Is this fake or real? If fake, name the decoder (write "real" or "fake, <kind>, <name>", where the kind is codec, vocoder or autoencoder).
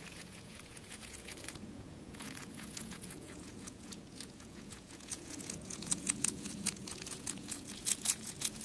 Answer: fake, vocoder, Vocos